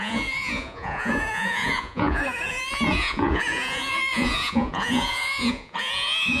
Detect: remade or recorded remade